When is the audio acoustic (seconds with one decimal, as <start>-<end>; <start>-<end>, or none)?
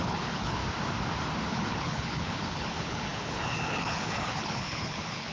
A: 0.6-1.5